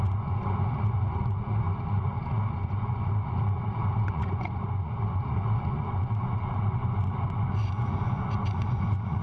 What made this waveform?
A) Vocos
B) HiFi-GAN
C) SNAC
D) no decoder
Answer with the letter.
A